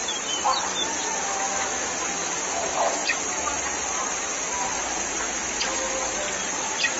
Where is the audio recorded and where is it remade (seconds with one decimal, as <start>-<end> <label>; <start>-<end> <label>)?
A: 0.0-0.6 remade; 0.6-3.0 recorded; 3.0-5.2 remade; 5.2-7.0 recorded